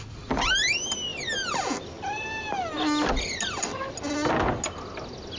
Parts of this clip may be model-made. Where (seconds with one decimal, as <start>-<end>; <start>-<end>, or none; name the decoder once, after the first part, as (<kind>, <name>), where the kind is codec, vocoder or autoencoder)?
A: none